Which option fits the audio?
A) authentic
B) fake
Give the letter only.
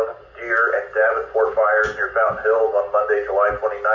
A